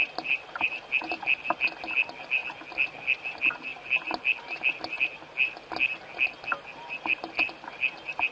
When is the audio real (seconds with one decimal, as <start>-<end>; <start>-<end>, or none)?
0.0-8.3